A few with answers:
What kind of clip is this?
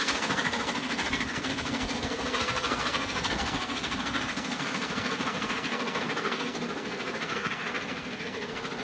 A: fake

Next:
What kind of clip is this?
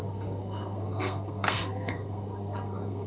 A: fake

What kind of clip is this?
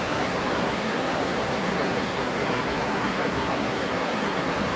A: fake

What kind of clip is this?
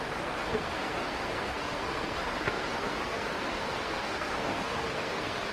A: fake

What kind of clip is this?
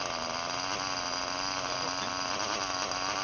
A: real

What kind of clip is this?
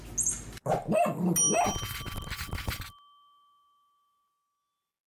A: real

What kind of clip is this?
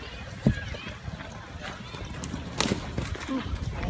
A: real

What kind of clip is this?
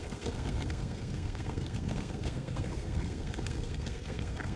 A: fake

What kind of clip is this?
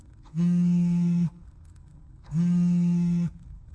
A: fake